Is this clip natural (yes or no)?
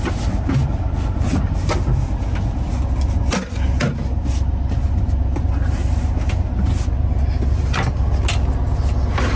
yes